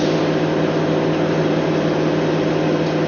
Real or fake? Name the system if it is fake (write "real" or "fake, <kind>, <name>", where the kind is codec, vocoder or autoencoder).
real